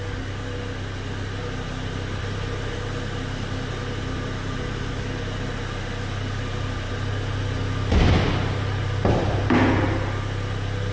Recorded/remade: recorded